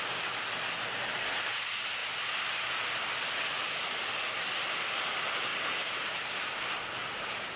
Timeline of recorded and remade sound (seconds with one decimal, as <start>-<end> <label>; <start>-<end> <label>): 0.0-7.6 recorded